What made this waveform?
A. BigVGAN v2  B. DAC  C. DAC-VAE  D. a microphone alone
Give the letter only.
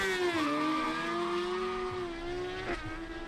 D